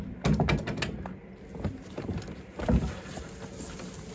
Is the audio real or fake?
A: real